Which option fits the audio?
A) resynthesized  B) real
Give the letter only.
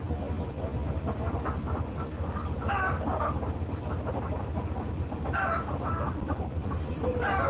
B